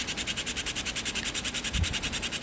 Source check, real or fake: real